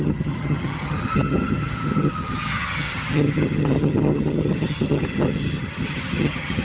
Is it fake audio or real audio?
fake